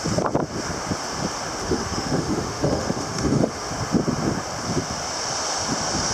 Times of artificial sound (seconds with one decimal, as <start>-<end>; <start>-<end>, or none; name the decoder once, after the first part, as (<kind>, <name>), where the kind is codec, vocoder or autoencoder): 1.6-3.7 (autoencoder, DAC-VAE)